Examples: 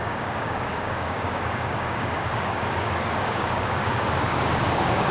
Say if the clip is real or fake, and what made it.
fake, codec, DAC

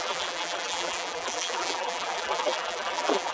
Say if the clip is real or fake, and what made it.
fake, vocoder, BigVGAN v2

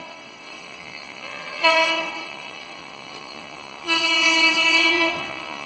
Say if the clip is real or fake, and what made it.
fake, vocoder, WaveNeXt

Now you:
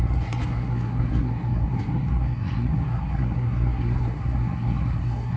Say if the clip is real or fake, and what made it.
fake, codec, SNAC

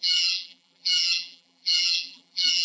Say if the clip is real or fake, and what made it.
fake, vocoder, BigVGAN v2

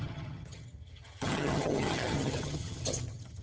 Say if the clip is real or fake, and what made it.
fake, vocoder, HiFi-GAN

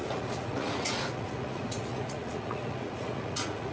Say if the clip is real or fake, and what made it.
fake, vocoder, Vocos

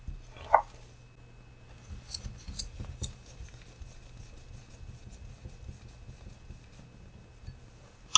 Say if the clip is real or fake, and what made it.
real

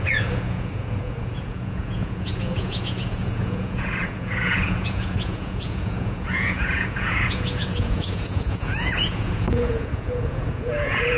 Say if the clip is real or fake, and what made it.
fake, vocoder, Vocos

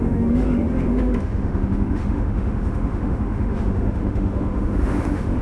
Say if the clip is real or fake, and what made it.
fake, autoencoder, DAC-VAE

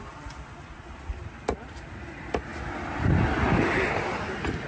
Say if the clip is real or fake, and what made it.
real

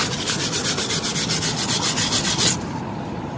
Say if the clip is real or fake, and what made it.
real